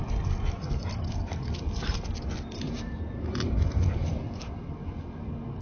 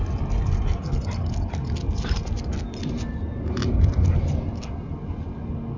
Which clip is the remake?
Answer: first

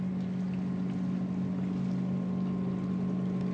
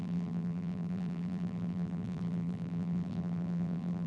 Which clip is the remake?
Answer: second